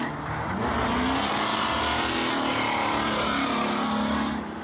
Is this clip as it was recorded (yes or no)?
yes